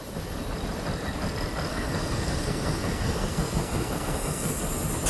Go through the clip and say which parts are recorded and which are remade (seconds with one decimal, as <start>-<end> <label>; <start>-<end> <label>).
0.0-1.7 recorded; 1.7-4.6 remade; 4.6-5.1 recorded